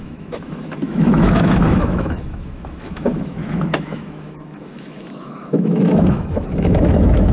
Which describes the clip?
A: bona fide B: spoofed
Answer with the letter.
B